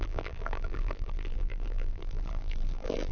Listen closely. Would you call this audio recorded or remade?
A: remade